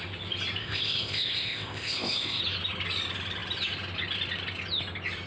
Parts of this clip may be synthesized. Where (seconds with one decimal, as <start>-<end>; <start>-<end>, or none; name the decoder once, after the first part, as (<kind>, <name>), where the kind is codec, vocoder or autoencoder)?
0.6-2.4 (codec, ZipCodec)